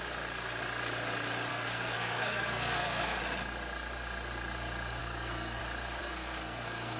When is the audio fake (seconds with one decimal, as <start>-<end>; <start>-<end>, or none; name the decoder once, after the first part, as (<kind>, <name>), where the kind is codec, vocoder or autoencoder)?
1.5-3.2 (codec, SNAC); 5.0-5.6; 6.0-7.0